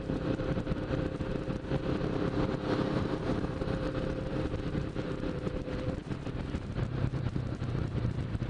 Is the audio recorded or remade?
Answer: remade